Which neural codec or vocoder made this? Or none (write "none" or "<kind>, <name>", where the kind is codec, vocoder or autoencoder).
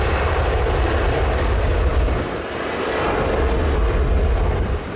none